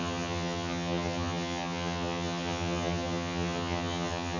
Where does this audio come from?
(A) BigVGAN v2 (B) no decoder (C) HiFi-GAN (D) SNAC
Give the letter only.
C